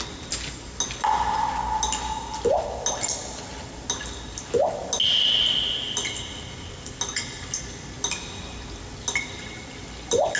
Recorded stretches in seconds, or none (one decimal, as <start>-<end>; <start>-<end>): 0.0-10.4